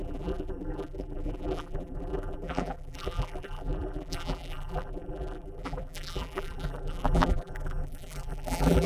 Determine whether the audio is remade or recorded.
remade